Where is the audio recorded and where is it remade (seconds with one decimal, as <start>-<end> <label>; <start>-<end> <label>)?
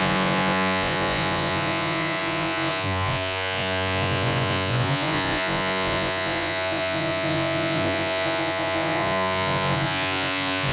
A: 0.0-10.7 remade